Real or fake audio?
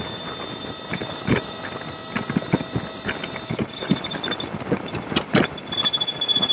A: real